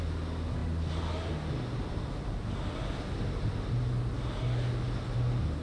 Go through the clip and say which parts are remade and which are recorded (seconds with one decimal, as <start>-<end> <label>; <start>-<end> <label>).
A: 0.0-5.6 recorded